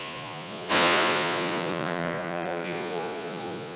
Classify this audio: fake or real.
fake